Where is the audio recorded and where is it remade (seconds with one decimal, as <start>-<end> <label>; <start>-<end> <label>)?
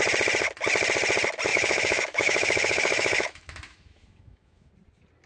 0.0-1.5 recorded; 1.5-4.7 remade; 4.7-5.3 recorded